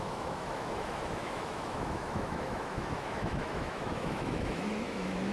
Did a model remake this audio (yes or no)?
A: yes